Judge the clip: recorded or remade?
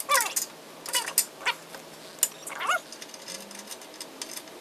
recorded